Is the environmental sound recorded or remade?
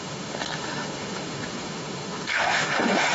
remade